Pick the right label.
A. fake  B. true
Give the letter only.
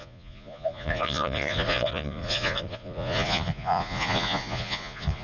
A